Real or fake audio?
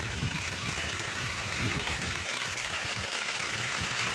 fake